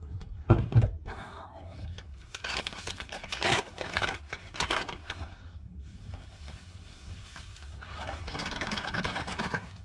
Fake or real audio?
fake